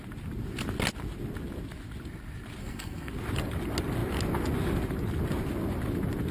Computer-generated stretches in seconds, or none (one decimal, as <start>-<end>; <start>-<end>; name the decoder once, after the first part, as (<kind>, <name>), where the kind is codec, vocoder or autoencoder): 2.6-3.1 (codec, SNAC)